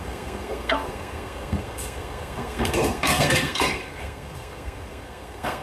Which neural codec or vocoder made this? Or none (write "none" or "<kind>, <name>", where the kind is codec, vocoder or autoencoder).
codec, SNAC